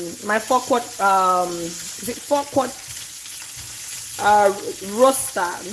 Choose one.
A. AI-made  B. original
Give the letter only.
B